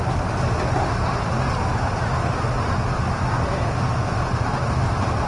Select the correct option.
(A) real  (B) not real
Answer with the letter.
A